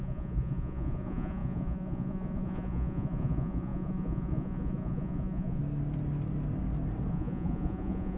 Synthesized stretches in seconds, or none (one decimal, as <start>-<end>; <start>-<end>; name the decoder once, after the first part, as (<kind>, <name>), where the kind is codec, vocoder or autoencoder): 0.0-5.6 (vocoder, Vocos); 7.1-8.2